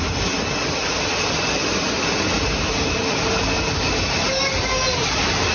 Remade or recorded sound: recorded